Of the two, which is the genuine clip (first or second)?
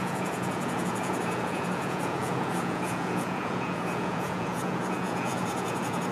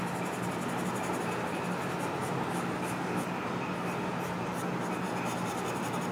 second